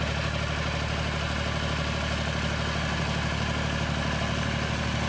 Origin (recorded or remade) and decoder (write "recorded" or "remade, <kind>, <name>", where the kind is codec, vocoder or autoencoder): recorded